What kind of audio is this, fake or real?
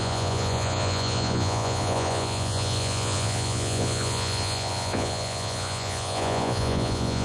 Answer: fake